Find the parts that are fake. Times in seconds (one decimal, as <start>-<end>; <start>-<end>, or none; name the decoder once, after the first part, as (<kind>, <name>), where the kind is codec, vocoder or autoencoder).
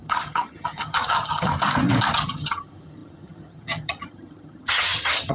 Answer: 0.0-1.5 (vocoder, HiFi-GAN); 2.1-5.3